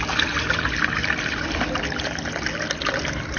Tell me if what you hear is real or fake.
real